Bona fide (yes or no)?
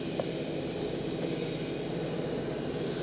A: yes